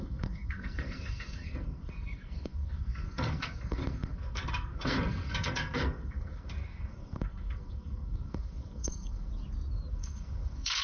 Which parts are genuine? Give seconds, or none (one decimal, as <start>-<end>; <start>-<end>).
9.3-9.9